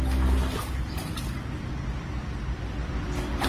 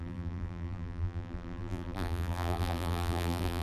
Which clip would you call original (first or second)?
first